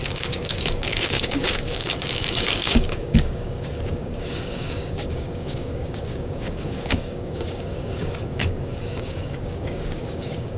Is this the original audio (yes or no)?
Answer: no